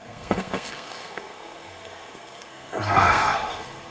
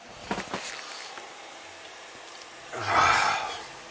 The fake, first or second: first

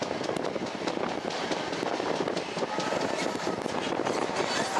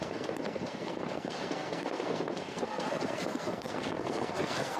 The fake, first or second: second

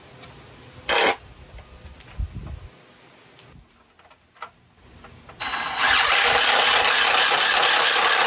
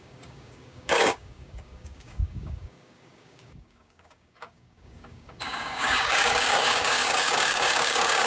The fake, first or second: second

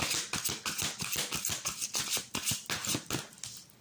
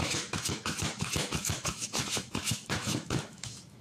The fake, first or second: second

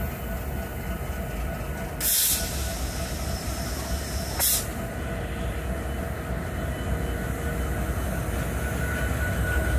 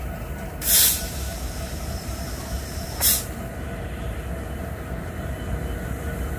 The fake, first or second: second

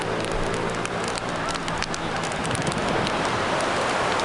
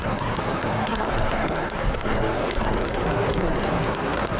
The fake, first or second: second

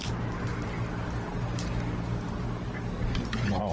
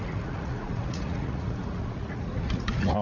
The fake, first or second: second